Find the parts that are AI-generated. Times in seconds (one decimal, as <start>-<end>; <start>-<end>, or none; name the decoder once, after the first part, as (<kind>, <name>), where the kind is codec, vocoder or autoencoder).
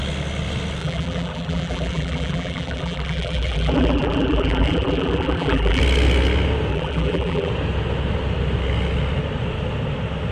0.8-5.8 (vocoder, BigVGAN v2); 6.7-7.5